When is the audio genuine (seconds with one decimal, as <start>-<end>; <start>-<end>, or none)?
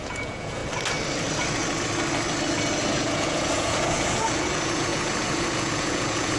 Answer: 0.6-2.9